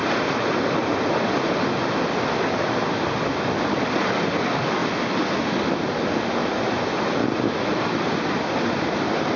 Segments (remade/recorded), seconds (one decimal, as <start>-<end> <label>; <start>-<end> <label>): 0.0-0.9 remade; 0.9-6.4 recorded; 6.4-7.1 remade; 7.1-9.4 recorded